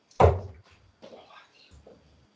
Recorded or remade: recorded